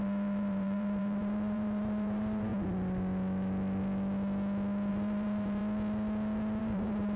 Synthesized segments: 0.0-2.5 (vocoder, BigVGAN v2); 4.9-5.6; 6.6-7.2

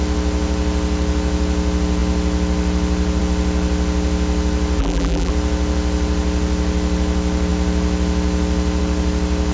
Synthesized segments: 4.8-5.3 (vocoder, BigVGAN v2)

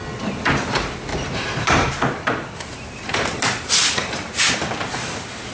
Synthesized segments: 1.1-4.4 (vocoder, BigVGAN v2)

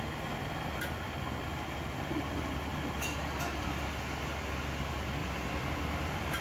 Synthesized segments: 5.2-6.4 (vocoder, BigVGAN v2)

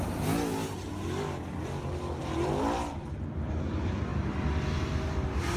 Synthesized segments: none